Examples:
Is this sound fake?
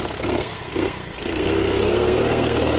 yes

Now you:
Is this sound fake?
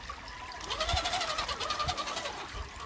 no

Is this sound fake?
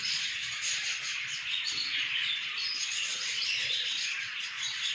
yes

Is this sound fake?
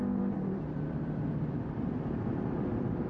yes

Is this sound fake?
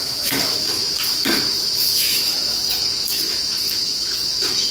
yes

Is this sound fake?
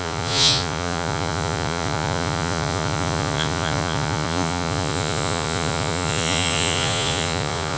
yes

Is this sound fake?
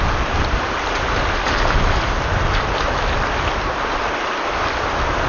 no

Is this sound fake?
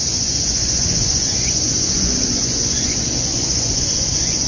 yes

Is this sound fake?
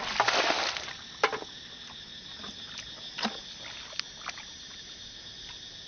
no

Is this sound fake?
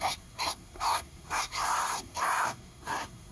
yes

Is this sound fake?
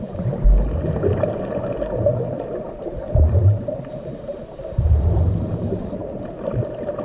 no